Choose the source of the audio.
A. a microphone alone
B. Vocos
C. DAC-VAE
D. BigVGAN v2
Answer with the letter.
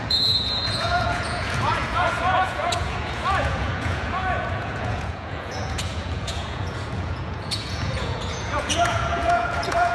B